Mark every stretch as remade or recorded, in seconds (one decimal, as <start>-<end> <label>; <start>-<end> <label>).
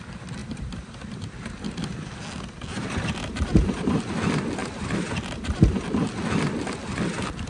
0.0-0.4 recorded; 0.4-1.6 remade; 1.6-2.7 recorded; 2.7-4.0 remade; 4.0-4.6 recorded; 4.6-5.6 remade; 5.6-7.5 recorded